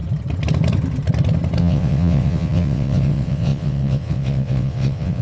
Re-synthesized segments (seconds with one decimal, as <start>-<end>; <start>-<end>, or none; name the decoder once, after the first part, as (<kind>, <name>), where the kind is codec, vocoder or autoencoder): 1.6-5.2 (vocoder, WaveNeXt)